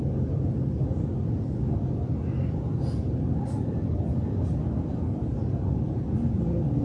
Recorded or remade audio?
recorded